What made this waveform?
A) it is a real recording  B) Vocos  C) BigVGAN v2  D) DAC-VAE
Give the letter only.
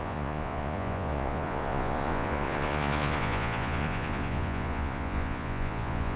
B